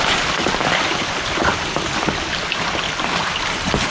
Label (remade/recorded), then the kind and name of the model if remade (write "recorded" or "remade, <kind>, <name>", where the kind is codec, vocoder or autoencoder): recorded